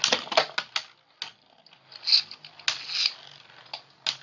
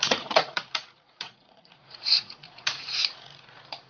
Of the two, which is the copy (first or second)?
second